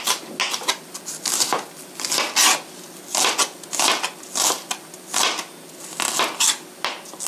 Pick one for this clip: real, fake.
real